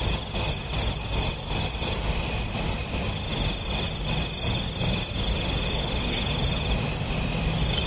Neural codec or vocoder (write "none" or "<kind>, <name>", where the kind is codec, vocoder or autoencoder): none